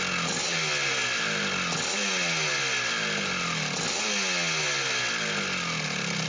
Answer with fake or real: real